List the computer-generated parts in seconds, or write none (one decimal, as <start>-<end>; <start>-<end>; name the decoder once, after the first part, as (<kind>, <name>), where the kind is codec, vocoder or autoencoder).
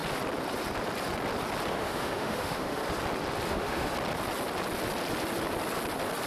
1.7-2.8 (autoencoder, DAC-VAE); 3.5-3.9